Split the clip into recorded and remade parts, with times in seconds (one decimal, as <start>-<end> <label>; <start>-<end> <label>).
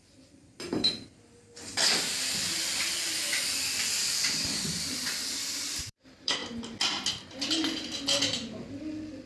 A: 0.0-6.4 remade; 6.4-8.7 recorded; 8.7-9.3 remade